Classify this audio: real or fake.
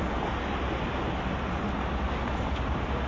real